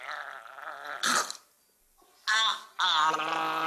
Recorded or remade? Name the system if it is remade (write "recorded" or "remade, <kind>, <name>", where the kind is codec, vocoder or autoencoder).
recorded